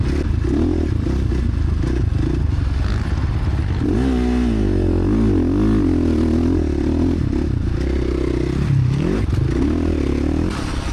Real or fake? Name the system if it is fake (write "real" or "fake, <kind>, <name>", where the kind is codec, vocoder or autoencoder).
real